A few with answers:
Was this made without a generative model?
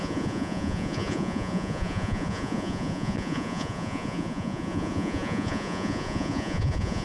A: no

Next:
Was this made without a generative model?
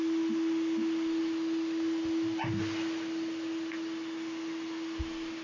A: yes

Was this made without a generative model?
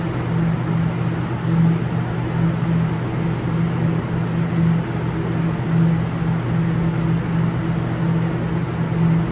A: yes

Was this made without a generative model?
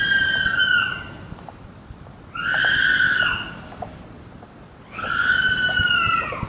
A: yes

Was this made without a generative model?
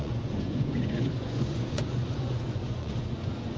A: no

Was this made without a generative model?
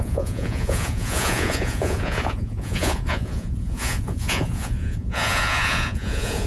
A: no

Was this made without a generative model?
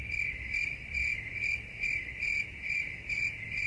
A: yes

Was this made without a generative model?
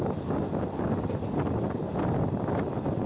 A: yes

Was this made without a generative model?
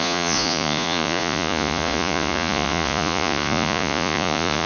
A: no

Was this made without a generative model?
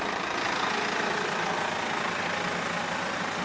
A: yes